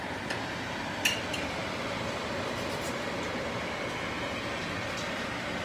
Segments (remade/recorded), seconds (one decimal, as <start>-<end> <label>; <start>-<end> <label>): 0.0-5.6 recorded